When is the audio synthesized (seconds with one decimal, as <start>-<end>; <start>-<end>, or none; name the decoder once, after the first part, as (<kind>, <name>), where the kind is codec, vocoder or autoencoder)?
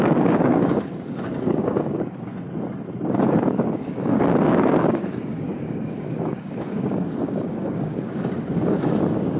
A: 0.0-2.3 (codec, DAC); 3.5-9.4